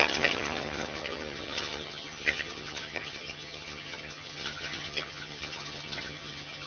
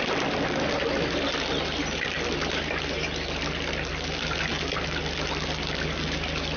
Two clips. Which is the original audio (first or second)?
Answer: second